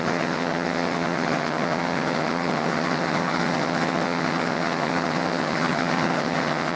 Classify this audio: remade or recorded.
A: remade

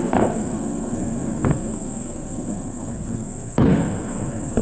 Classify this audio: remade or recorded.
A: remade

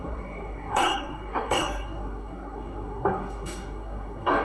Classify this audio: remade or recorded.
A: remade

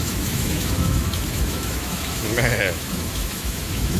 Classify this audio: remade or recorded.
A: remade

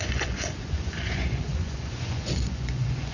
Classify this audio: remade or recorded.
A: remade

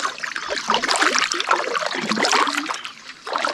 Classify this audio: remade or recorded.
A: recorded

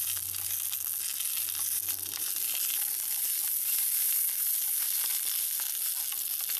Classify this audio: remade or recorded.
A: recorded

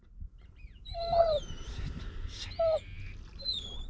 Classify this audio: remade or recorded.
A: recorded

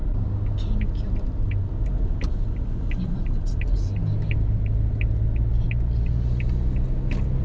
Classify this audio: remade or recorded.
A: recorded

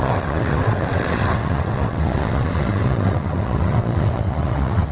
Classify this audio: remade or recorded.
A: remade